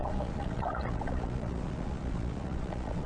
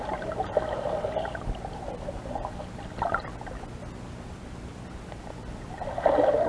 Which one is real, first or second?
second